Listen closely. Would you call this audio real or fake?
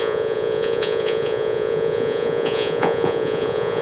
fake